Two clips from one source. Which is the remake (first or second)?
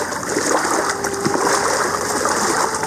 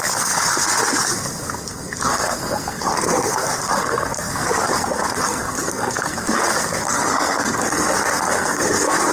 second